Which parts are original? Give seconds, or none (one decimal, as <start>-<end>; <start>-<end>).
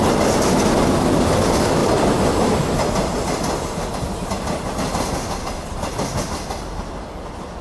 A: 0.0-7.6